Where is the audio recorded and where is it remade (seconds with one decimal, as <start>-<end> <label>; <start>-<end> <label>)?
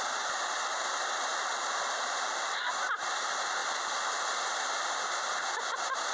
0.0-1.3 recorded; 1.3-2.5 remade; 2.5-3.6 recorded; 3.6-5.0 remade; 5.0-6.1 recorded